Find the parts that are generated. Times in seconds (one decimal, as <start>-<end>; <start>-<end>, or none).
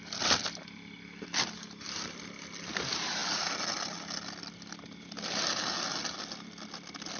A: none